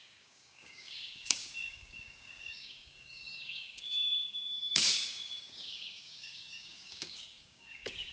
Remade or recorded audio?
remade